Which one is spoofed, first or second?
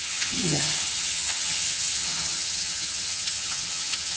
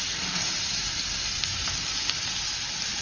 first